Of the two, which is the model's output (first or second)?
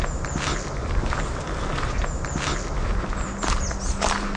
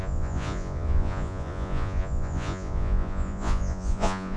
second